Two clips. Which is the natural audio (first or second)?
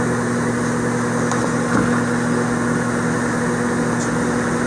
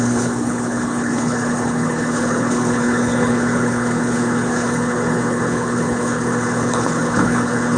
first